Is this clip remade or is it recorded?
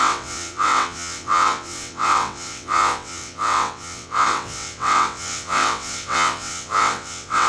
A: remade